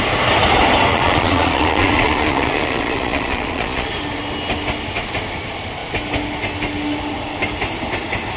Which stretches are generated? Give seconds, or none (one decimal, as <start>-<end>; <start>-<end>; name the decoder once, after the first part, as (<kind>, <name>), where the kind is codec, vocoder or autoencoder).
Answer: 0.9-3.9 (vocoder, Vocos)